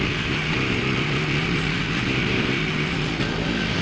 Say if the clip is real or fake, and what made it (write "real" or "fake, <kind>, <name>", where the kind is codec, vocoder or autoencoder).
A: real